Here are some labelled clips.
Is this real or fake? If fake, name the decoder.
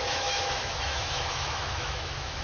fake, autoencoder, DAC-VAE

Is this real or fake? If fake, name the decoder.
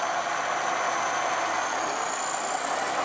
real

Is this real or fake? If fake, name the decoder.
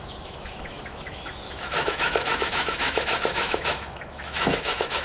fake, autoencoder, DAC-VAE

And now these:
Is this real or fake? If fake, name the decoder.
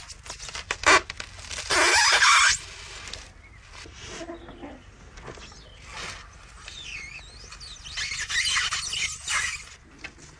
real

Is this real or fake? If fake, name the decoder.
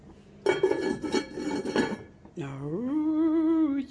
real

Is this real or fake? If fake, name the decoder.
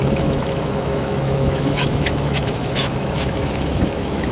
fake, autoencoder, DAC-VAE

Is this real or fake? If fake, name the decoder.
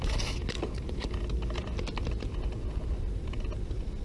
real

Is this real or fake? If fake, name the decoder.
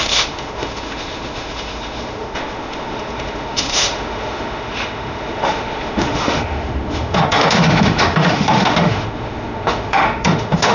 fake, autoencoder, DAC-VAE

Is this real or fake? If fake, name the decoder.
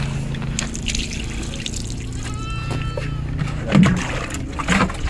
real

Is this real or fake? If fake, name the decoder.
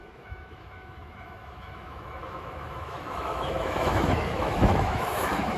fake, autoencoder, DAC-VAE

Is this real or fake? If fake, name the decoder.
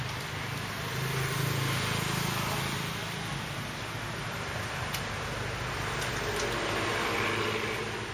real